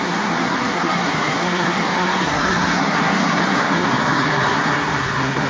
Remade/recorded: remade